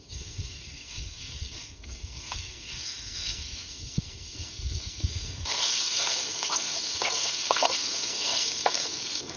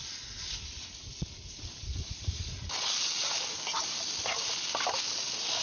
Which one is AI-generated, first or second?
first